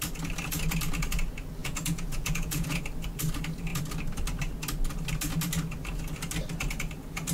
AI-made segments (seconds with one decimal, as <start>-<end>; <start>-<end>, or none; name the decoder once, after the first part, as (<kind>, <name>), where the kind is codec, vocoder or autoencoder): 1.6-2.8 (vocoder, Vocos)

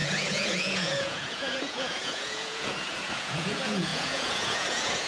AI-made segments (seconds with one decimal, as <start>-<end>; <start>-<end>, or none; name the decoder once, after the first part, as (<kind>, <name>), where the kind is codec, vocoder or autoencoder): 0.0-5.1 (vocoder, Vocos)

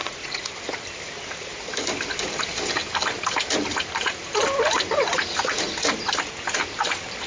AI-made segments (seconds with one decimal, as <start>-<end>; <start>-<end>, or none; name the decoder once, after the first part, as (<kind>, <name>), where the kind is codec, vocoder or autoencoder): 0.0-0.5 (vocoder, Vocos)

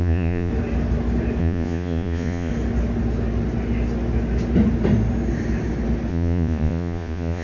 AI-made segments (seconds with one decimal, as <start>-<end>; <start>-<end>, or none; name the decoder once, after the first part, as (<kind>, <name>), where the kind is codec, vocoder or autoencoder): 0.0-0.5 (vocoder, Vocos); 1.4-2.5; 6.1-7.4

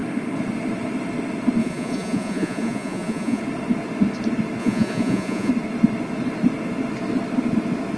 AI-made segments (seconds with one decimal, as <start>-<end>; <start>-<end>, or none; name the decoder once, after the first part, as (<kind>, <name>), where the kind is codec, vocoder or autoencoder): 1.6-3.4 (vocoder, Vocos); 4.6-5.5